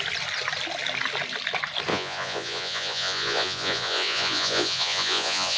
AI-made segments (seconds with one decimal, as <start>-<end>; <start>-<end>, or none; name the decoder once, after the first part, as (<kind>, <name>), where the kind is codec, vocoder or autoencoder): 1.9-5.6 (vocoder, Vocos)